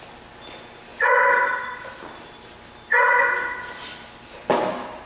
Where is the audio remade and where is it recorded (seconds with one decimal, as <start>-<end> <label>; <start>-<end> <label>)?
0.0-5.1 recorded